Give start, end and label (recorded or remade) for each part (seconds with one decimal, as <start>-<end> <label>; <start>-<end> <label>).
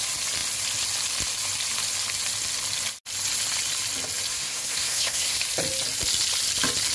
0.0-4.3 recorded; 4.3-5.4 remade; 5.4-6.9 recorded